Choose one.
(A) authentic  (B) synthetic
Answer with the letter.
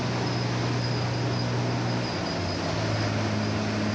A